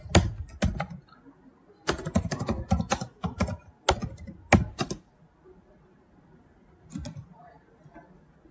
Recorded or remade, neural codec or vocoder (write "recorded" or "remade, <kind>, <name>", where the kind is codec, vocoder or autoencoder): recorded